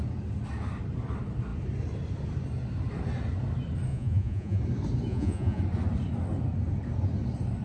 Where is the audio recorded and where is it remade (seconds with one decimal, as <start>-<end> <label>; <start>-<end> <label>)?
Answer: 0.0-3.9 recorded; 3.9-4.6 remade; 4.6-5.1 recorded; 5.1-5.6 remade; 5.6-7.6 recorded